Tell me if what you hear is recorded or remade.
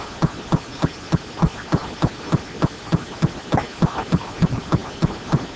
recorded